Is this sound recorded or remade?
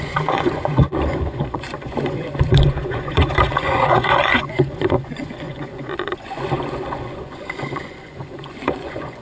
remade